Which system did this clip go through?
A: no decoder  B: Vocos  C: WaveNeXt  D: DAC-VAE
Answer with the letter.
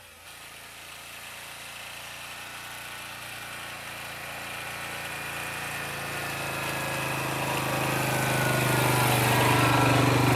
A